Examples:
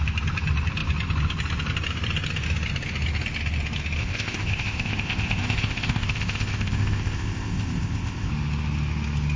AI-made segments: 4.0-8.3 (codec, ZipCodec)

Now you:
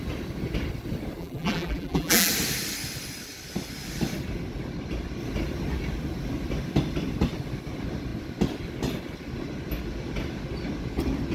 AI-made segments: 1.2-2.3 (vocoder, BigVGAN v2)

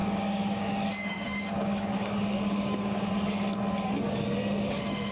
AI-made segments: 0.0-3.1 (codec, DAC)

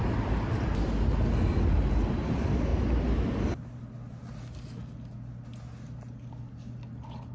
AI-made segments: none